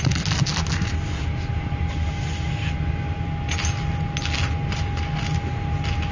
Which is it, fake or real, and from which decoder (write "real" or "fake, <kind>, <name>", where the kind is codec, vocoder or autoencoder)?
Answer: real